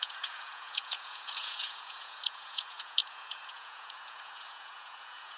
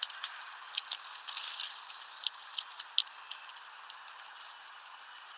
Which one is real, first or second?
second